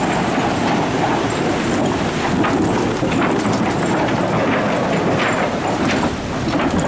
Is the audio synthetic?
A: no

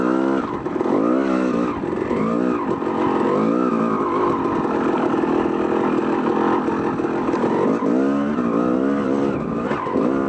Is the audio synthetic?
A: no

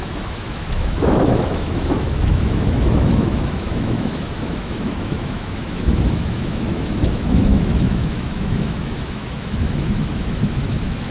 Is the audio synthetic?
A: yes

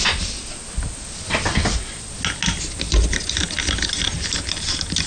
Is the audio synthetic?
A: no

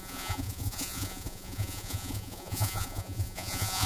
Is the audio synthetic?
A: yes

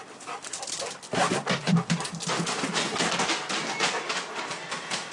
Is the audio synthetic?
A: no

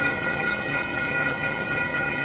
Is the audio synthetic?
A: yes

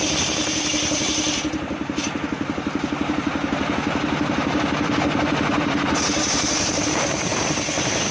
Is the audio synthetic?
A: yes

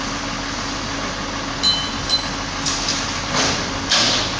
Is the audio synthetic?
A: no